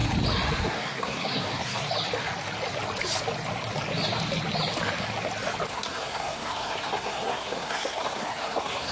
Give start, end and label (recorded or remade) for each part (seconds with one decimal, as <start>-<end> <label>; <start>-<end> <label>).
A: 0.0-0.6 recorded; 0.6-1.8 remade; 1.8-5.7 recorded; 5.7-8.9 remade

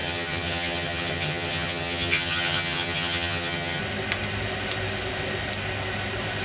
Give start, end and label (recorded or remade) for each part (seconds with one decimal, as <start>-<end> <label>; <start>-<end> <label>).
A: 0.0-3.8 remade; 3.8-6.4 recorded

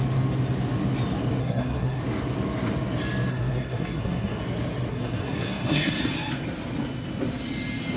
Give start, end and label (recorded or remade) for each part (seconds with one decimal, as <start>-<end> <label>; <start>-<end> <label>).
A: 0.0-1.4 recorded; 1.4-2.0 remade; 2.0-3.3 recorded; 3.3-4.4 remade; 4.4-4.9 recorded; 4.9-6.0 remade; 6.0-8.0 recorded

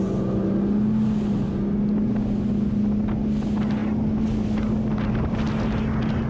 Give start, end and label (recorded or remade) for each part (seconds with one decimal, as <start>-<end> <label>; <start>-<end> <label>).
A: 0.0-6.3 recorded

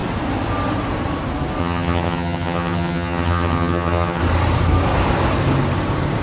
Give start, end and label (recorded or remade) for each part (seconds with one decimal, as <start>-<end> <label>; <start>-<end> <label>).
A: 0.0-1.6 recorded; 1.6-4.2 remade; 4.2-6.2 recorded

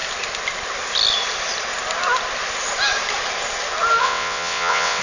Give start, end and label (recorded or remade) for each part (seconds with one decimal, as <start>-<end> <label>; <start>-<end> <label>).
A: 0.0-4.0 recorded; 4.0-5.0 remade

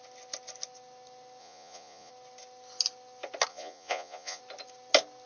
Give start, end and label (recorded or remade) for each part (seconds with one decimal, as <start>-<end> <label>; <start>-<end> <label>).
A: 0.0-1.4 recorded; 1.4-2.1 remade; 2.1-3.5 recorded; 3.5-4.4 remade; 4.4-5.3 recorded